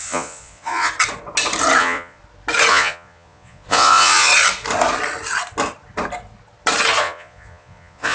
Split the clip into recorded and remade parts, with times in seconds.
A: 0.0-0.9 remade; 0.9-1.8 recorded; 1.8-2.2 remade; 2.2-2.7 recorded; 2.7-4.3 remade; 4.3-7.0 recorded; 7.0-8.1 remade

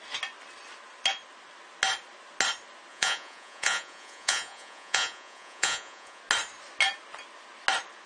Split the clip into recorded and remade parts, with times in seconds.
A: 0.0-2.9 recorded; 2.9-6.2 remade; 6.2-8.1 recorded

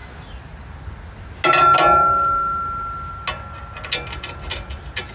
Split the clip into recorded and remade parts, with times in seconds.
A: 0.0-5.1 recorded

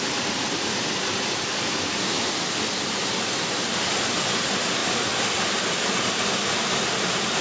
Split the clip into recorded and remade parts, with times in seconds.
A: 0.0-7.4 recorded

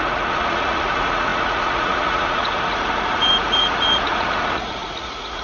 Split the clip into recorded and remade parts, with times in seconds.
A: 0.0-5.4 remade